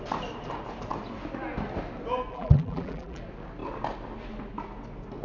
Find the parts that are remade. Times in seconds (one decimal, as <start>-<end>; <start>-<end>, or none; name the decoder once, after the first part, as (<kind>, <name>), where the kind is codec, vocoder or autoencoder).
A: 2.3-3.2 (vocoder, BigVGAN v2)